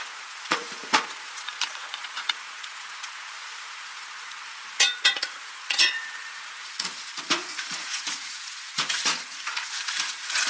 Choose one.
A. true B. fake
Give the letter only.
B